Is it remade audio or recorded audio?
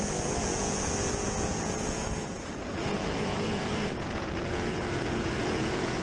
remade